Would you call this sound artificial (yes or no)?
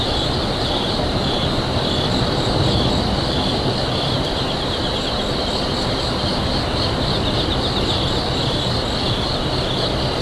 no